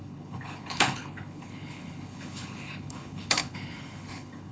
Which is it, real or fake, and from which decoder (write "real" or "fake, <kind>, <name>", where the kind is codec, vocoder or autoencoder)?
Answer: fake, codec, HILCodec